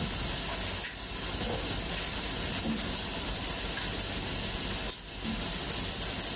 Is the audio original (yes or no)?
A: yes